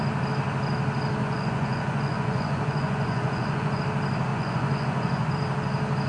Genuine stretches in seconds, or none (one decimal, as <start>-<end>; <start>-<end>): 0.0-1.2; 3.8-4.3; 5.3-6.1